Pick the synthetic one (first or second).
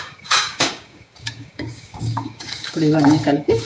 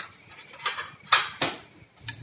first